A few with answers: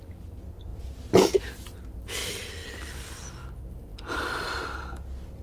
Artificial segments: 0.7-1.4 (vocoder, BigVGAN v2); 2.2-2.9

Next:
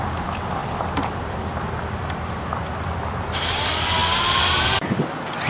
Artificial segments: none